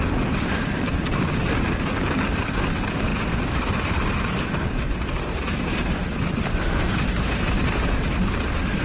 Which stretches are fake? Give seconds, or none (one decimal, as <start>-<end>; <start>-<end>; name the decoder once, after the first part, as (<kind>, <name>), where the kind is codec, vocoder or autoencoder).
3.1-7.6 (vocoder, BigVGAN v2)